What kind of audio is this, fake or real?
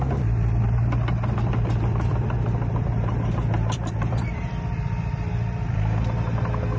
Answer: fake